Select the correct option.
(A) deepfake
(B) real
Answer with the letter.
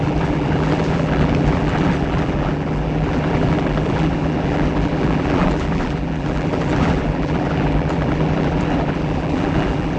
A